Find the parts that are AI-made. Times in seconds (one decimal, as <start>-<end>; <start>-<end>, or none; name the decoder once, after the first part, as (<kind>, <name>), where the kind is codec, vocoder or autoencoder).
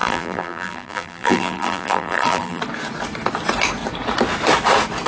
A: 0.0-2.6 (vocoder, BigVGAN v2)